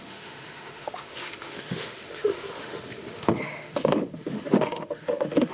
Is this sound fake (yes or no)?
yes